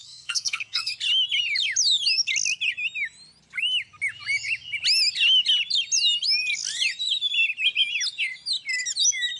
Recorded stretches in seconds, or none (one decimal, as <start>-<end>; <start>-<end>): 0.9-9.4